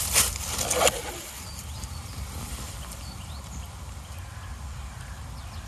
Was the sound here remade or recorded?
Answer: remade